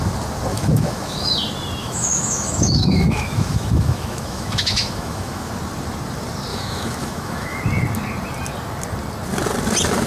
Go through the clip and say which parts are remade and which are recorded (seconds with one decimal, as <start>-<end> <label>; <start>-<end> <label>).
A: 0.0-0.5 recorded; 0.5-1.3 remade; 1.3-1.8 recorded; 1.8-5.5 remade; 5.5-6.5 recorded; 6.5-7.6 remade; 7.6-10.1 recorded